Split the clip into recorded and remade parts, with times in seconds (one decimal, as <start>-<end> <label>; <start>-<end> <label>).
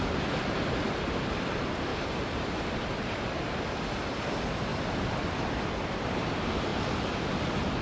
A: 0.0-1.9 recorded; 1.9-4.0 remade; 4.0-4.7 recorded; 4.7-5.2 remade; 5.2-7.8 recorded